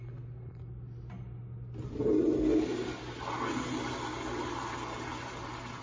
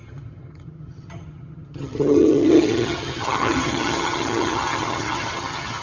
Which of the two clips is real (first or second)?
first